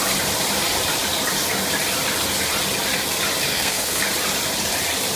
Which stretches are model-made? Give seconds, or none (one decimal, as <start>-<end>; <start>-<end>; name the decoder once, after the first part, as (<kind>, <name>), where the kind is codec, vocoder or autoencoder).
3.5-4.0 (codec, SNAC)

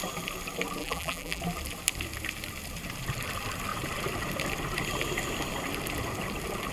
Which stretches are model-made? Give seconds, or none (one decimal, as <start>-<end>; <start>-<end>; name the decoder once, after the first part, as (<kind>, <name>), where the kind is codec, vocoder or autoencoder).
0.8-1.4 (vocoder, BigVGAN v2)